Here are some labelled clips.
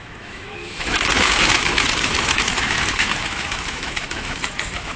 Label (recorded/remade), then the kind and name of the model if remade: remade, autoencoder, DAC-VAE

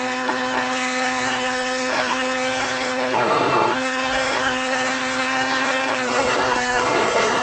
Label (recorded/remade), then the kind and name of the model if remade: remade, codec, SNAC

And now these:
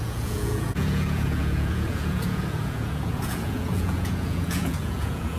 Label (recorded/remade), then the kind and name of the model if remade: remade, vocoder, Vocos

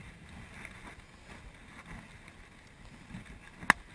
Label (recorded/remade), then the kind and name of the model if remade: recorded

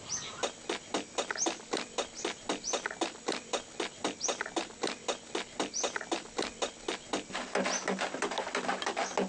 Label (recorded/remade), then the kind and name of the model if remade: recorded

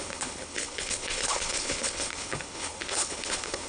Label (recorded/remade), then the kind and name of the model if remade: remade, codec, HILCodec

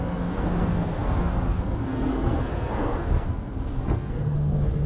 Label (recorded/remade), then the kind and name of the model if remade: remade, codec, SNAC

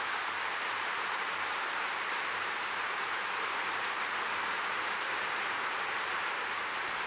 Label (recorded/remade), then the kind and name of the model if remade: remade, vocoder, BigVGAN v2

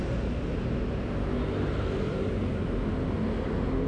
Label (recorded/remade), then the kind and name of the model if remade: recorded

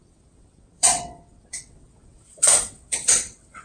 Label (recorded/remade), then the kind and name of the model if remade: remade, vocoder, WaveNeXt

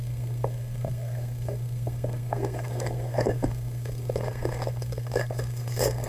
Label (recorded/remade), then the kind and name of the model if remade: remade, codec, SNAC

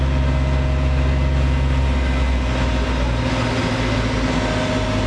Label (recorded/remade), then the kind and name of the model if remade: recorded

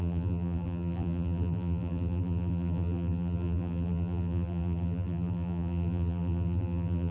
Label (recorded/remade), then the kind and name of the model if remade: remade, vocoder, BigVGAN v2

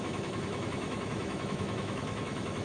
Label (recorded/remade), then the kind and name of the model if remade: remade, autoencoder, DAC-VAE